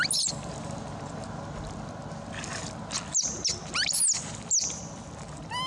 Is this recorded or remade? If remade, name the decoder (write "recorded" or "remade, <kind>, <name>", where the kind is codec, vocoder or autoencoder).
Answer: recorded